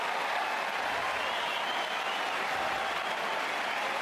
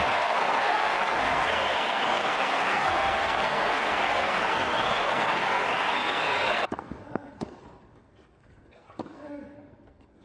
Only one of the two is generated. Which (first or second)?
second